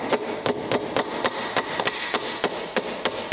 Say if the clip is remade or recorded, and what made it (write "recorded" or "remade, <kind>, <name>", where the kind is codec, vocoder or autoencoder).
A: recorded